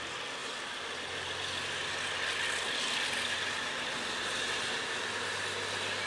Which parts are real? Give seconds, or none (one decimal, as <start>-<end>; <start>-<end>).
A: 0.0-6.1